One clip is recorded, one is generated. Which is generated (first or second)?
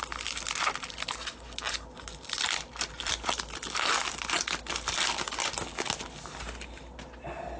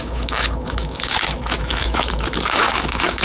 second